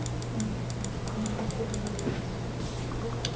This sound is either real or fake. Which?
real